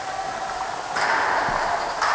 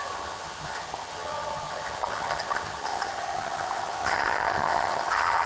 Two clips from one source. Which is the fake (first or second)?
second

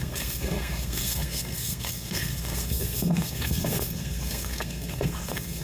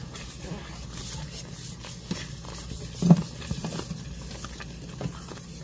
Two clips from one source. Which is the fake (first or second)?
first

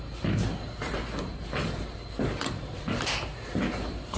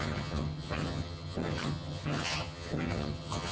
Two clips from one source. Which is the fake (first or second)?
second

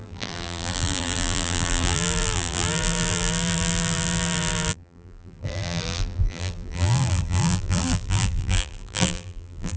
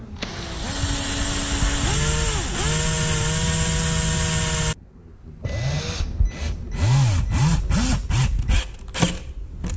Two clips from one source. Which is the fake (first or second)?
first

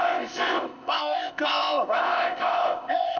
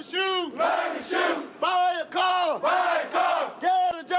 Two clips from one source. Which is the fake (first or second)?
first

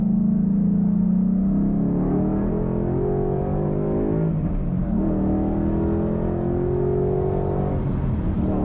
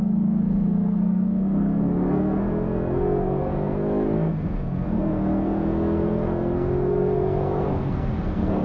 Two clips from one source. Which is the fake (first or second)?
second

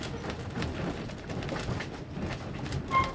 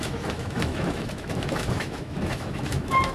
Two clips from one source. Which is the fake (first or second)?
second